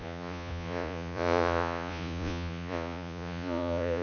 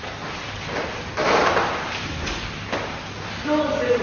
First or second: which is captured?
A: second